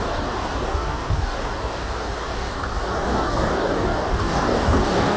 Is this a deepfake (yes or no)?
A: yes